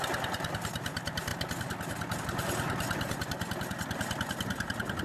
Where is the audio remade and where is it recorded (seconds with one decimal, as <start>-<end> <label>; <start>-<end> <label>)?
0.0-5.0 recorded